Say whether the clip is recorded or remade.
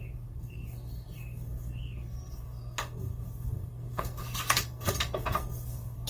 remade